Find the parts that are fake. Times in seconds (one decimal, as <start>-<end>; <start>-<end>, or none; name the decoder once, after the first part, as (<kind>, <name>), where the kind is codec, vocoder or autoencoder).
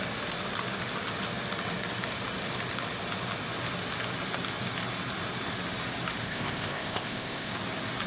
6.2-7.5 (codec, ZipCodec)